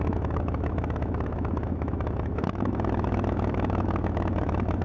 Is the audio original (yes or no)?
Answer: no